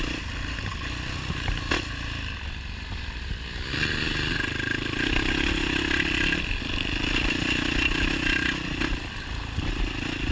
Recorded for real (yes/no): yes